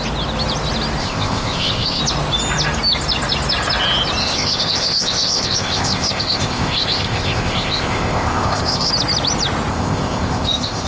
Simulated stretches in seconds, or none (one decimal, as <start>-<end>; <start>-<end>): 1.0-2.0; 4.2-8.9; 9.7-10.9